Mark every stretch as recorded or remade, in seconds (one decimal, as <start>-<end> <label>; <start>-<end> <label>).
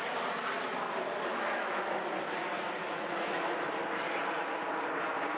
0.0-1.3 recorded; 1.3-2.0 remade; 2.0-2.8 recorded; 2.8-3.4 remade; 3.4-5.4 recorded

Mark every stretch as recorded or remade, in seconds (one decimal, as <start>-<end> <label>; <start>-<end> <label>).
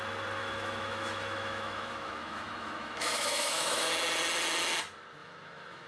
0.0-0.4 recorded; 0.4-3.9 remade; 3.9-5.2 recorded; 5.2-5.9 remade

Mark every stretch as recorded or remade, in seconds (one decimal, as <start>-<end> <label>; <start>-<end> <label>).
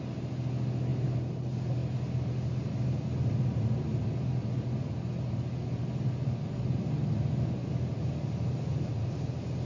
0.0-9.7 recorded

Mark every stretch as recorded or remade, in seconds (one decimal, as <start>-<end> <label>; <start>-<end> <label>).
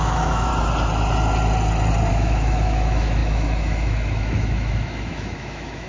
0.0-0.5 remade; 0.5-2.1 recorded; 2.1-5.9 remade